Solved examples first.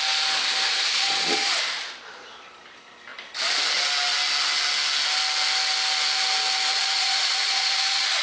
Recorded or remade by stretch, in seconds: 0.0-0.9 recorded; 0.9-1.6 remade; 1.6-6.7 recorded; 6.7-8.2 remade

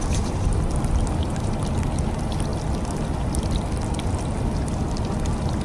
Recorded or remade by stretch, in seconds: 0.0-5.6 recorded

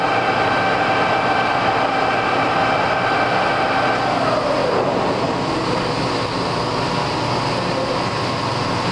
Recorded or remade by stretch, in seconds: 0.0-8.9 recorded

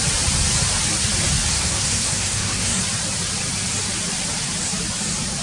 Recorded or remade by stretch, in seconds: 0.0-1.5 recorded; 1.5-2.8 remade; 2.8-5.4 recorded

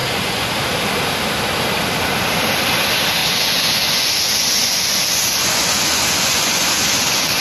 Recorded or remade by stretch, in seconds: 0.0-0.5 remade; 0.5-3.2 recorded; 3.2-7.4 remade